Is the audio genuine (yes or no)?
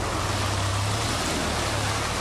yes